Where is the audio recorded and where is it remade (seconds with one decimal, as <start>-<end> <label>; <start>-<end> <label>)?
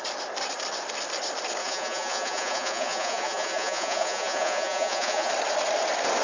0.0-1.6 recorded; 1.6-5.3 remade; 5.3-6.2 recorded